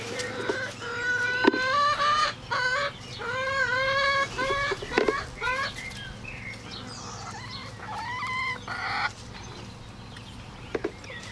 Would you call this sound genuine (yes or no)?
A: yes